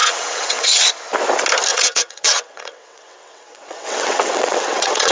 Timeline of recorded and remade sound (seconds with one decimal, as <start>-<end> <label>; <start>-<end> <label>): 0.0-0.9 remade; 0.9-1.7 recorded; 1.7-5.1 remade